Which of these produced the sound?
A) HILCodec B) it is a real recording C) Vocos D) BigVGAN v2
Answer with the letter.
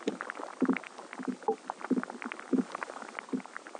B